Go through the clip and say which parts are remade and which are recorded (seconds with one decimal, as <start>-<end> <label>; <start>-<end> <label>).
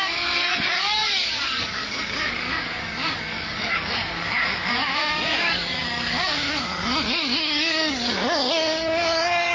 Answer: 0.0-9.5 remade